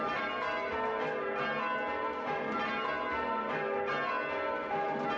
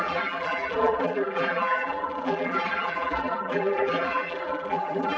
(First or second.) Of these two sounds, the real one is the first